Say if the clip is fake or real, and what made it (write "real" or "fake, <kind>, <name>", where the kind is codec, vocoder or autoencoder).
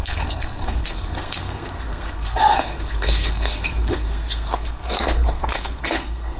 fake, codec, SNAC